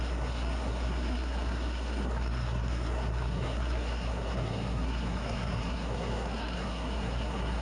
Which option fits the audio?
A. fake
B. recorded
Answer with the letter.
A